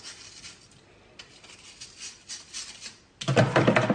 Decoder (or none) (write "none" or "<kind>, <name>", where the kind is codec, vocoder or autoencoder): none